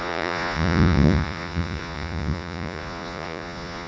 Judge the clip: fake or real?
fake